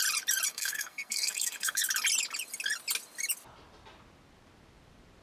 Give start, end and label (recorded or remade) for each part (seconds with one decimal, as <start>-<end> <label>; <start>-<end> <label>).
0.0-0.5 recorded; 0.5-1.8 remade; 1.8-5.2 recorded